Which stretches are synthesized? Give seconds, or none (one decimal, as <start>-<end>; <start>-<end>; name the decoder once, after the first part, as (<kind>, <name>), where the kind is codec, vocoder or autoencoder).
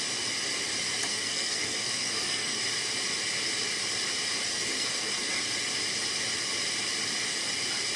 1.1-2.6 (codec, SNAC); 4.5-5.4